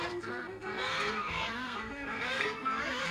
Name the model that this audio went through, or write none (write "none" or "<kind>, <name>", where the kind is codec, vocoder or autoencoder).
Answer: codec, SNAC